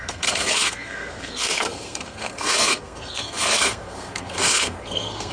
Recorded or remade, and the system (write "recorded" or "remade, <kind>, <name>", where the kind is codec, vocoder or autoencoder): remade, codec, SNAC